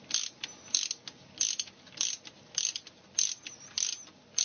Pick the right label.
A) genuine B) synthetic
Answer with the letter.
A